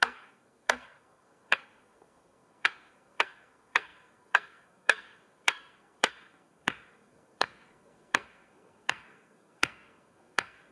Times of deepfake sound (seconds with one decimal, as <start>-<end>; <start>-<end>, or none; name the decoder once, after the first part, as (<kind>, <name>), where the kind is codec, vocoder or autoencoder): 0.0-10.7 (codec, SNAC)